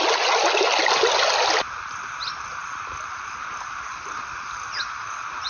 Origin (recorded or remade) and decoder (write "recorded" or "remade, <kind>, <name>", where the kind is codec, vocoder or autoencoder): recorded